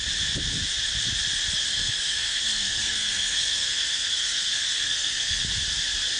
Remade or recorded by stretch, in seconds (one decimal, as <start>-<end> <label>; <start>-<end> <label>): 0.0-1.7 recorded; 1.7-5.4 remade; 5.4-6.2 recorded

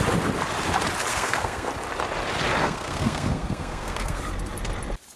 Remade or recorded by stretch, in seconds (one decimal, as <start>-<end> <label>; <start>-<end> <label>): 0.0-1.1 recorded; 1.1-1.7 remade; 1.7-2.6 recorded; 2.6-4.2 remade; 4.2-5.2 recorded

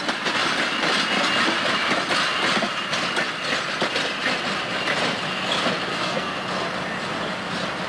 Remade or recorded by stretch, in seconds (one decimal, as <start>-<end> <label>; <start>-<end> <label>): 0.0-5.9 recorded; 5.9-6.4 remade; 6.4-7.9 recorded

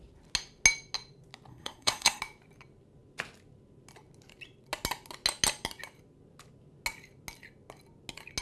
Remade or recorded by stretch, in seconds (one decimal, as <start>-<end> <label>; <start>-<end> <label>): 0.0-1.5 recorded; 1.5-2.2 remade; 2.2-8.4 recorded

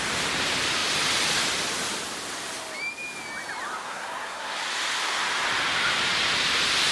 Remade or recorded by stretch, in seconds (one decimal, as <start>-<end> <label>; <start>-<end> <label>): 0.0-3.8 recorded; 3.8-4.6 remade; 4.6-6.9 recorded

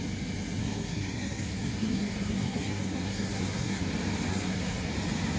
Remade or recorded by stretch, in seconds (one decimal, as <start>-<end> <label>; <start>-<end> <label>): 0.0-0.6 recorded; 0.6-3.8 remade; 3.8-4.3 recorded; 4.3-4.9 remade; 4.9-5.4 recorded

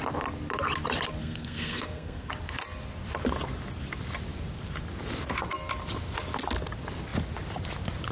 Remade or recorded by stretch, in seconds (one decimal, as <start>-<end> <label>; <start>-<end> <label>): 0.0-1.2 recorded; 1.2-2.3 remade; 2.3-8.1 recorded